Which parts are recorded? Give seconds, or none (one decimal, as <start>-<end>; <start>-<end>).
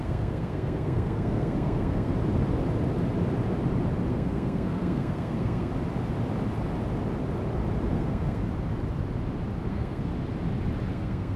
2.1-4.1; 5.7-7.9; 8.4-9.7; 10.1-10.9